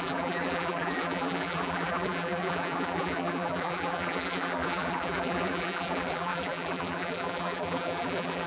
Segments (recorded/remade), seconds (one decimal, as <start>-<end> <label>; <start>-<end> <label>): 0.0-8.5 remade